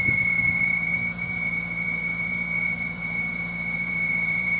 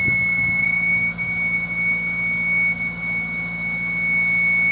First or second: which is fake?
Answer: first